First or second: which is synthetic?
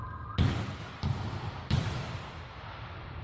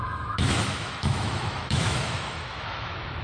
second